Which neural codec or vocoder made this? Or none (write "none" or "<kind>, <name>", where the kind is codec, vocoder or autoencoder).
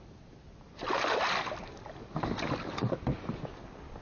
none